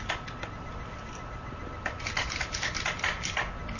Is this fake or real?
real